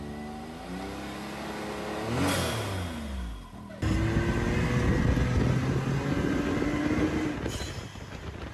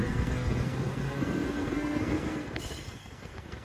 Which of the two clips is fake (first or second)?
second